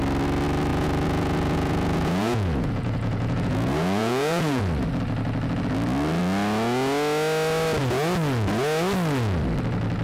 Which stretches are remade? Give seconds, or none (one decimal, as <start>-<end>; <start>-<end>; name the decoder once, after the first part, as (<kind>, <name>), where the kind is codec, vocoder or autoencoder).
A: 0.7-4.6 (vocoder, Vocos)